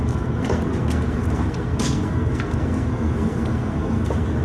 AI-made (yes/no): yes